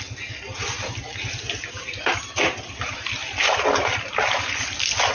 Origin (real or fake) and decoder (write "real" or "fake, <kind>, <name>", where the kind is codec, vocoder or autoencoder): real